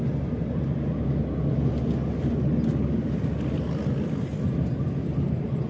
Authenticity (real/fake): real